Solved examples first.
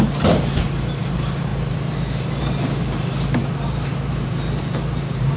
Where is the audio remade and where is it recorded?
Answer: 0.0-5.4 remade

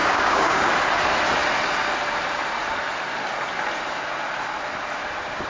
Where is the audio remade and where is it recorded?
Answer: 0.0-0.7 remade; 0.7-5.5 recorded

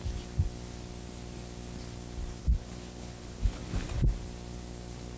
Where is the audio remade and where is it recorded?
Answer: 0.0-2.4 recorded; 2.4-3.6 remade; 3.6-5.2 recorded

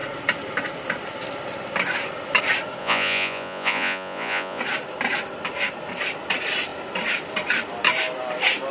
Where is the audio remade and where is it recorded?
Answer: 0.0-2.8 recorded; 2.8-4.6 remade; 4.6-8.7 recorded

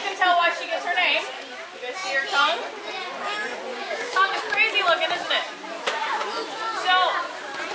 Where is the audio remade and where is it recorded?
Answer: 0.0-3.7 recorded; 3.7-4.4 remade; 4.4-7.7 recorded

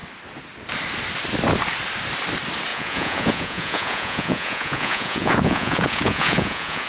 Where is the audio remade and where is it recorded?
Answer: 0.0-2.7 recorded; 2.7-6.9 remade